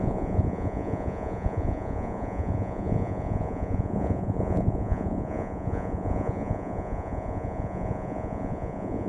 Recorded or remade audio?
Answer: remade